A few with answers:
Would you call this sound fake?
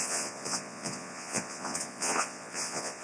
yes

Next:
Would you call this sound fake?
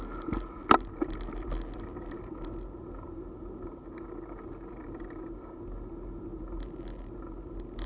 no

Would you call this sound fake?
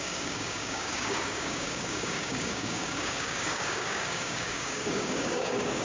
yes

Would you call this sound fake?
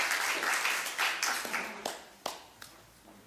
no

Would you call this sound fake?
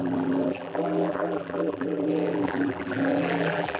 yes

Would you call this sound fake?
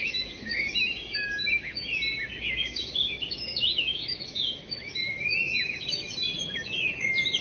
yes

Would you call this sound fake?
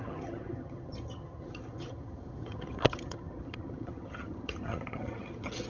yes